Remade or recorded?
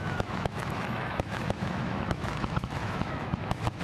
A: remade